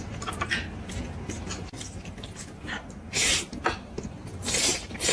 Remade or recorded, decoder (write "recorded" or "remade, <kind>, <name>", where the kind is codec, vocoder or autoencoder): recorded